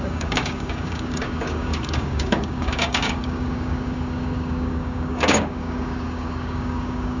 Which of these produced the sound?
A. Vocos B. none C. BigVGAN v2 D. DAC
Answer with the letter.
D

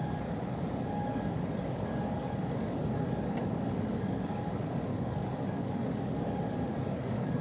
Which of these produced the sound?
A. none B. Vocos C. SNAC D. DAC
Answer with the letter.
D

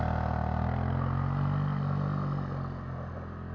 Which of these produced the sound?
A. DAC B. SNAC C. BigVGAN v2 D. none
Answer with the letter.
D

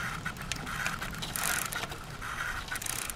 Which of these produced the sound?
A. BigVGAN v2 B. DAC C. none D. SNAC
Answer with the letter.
C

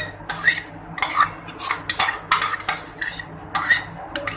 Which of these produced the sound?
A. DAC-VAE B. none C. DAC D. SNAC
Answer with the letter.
B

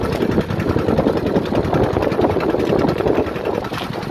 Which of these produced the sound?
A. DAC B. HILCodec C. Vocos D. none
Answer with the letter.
D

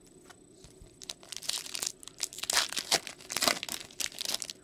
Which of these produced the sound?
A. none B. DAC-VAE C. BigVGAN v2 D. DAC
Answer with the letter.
A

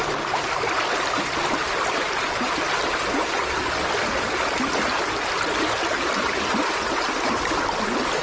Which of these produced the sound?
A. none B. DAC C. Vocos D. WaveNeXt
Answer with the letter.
A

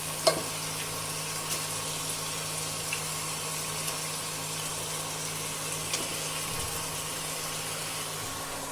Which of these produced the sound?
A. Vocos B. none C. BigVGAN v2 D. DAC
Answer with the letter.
B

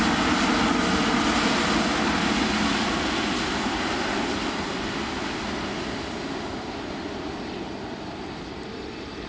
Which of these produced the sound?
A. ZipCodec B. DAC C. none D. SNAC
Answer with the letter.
C